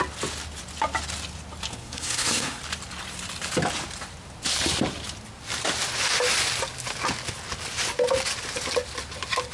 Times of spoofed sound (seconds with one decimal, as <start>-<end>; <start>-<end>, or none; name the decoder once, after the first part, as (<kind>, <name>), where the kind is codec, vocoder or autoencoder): 1.7-2.6 (codec, SNAC)